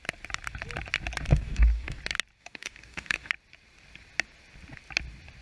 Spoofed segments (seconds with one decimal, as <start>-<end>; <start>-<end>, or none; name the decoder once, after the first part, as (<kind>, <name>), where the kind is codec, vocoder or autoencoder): 1.3-2.0 (codec, DAC); 2.4-3.3